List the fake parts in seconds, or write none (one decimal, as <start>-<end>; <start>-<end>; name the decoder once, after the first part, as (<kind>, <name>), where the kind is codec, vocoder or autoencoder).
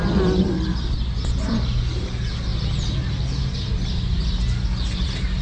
none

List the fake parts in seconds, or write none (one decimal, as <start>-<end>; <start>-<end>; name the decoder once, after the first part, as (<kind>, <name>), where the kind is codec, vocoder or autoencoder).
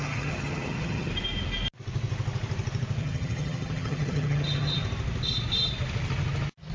0.0-1.1 (vocoder, HiFi-GAN); 3.0-4.8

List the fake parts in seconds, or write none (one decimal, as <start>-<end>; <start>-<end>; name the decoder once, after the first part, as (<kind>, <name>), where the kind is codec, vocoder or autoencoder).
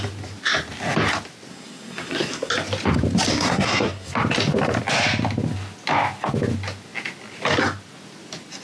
1.5-2.5 (codec, SNAC); 3.3-4.1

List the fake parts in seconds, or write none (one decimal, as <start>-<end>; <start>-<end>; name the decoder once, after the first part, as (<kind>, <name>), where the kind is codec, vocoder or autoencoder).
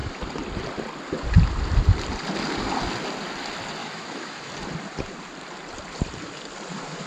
3.8-4.5 (autoencoder, DAC-VAE)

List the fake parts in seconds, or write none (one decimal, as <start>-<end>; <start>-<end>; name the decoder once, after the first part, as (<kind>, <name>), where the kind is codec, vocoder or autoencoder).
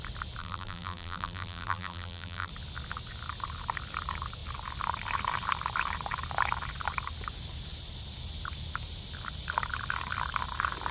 0.4-2.5 (vocoder, BigVGAN v2)